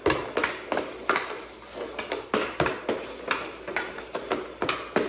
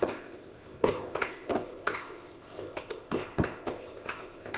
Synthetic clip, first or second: second